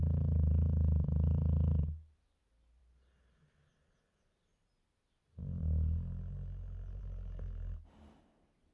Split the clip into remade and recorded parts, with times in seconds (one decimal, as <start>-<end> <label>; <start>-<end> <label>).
0.0-8.7 recorded